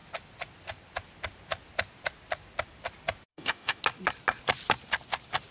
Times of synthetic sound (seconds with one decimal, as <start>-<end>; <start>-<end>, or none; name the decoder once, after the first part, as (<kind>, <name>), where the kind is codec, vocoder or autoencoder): 3.3-3.8 (autoencoder, DAC-VAE)